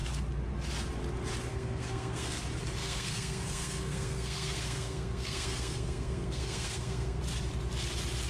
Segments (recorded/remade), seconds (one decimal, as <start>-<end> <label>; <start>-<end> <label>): 0.0-1.5 recorded; 1.5-2.4 remade; 2.4-2.8 recorded; 2.8-7.2 remade; 7.2-8.3 recorded